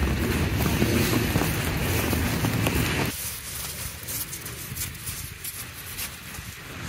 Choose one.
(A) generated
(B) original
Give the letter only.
B